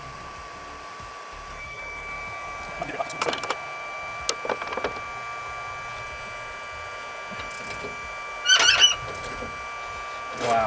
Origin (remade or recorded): recorded